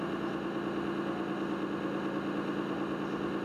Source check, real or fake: real